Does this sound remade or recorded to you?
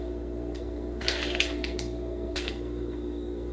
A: remade